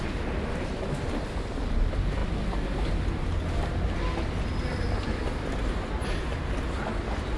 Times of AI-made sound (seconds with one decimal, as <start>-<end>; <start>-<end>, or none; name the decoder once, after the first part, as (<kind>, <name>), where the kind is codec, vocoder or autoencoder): none